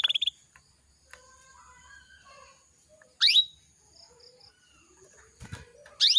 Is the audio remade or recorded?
recorded